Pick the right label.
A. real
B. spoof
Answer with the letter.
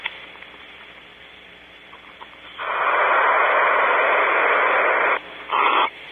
A